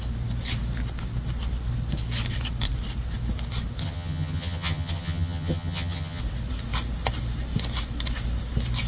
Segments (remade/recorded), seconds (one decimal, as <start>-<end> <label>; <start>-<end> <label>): 0.0-3.8 recorded; 3.8-6.2 remade; 6.2-8.9 recorded